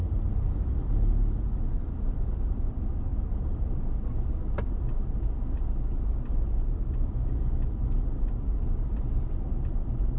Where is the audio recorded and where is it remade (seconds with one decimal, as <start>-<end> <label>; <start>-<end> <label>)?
0.0-10.2 recorded